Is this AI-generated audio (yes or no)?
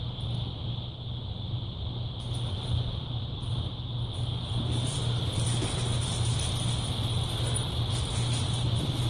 no